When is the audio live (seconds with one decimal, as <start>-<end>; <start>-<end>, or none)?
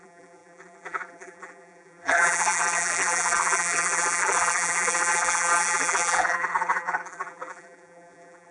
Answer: none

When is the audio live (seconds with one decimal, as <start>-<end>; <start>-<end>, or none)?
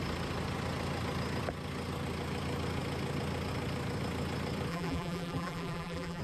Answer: 0.0-4.7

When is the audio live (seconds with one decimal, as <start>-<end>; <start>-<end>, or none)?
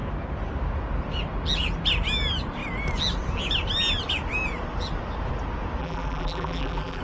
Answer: 0.0-5.8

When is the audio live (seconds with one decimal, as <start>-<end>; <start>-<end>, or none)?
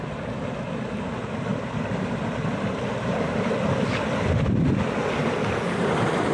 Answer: 0.0-1.5; 4.3-5.0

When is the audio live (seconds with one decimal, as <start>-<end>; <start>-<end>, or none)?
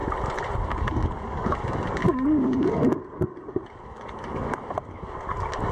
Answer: 0.0-0.8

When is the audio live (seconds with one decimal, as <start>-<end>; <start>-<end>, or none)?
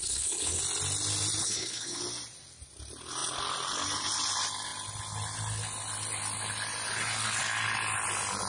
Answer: 0.6-1.4; 2.0-8.5